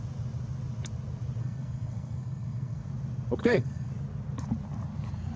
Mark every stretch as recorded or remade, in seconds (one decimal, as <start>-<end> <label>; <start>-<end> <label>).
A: 0.0-1.4 recorded; 1.4-2.9 remade; 2.9-3.4 recorded; 3.4-3.9 remade; 3.9-5.4 recorded